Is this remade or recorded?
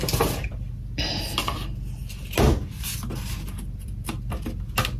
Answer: recorded